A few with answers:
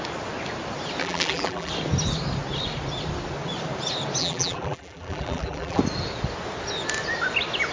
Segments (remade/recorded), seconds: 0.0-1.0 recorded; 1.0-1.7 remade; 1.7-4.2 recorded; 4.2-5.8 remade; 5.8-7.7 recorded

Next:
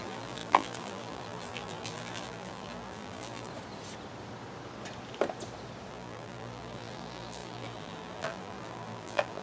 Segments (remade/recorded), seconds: 0.0-3.5 remade; 3.5-5.9 recorded; 5.9-9.4 remade

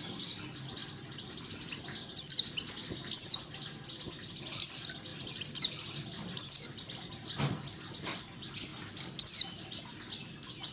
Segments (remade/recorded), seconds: 0.0-5.1 recorded; 5.1-8.2 remade; 8.2-10.7 recorded

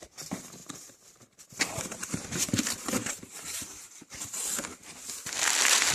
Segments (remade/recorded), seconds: 0.0-0.6 recorded; 0.6-4.1 remade; 4.1-5.9 recorded

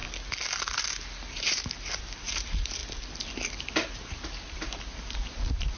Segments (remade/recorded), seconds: 0.0-1.3 recorded; 1.3-2.8 remade; 2.8-3.6 recorded; 3.6-5.8 remade

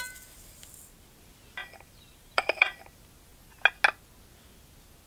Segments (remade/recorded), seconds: 0.0-1.6 recorded; 1.6-2.8 remade; 2.8-5.1 recorded

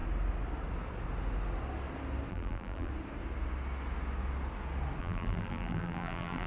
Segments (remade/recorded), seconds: 0.0-2.3 recorded; 2.3-2.9 remade; 2.9-5.0 recorded; 5.0-6.5 remade